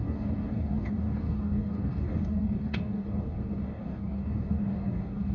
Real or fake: fake